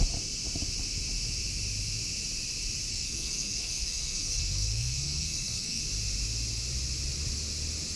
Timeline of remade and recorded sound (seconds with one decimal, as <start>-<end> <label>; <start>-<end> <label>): 0.0-2.9 recorded; 2.9-5.8 remade; 5.8-8.0 recorded